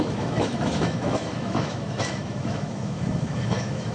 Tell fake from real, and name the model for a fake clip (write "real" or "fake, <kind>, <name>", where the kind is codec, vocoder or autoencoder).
fake, autoencoder, DAC-VAE